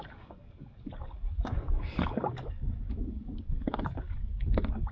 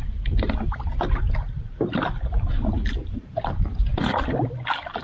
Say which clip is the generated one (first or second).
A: first